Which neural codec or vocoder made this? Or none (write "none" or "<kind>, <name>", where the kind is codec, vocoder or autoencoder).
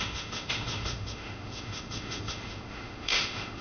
autoencoder, DAC-VAE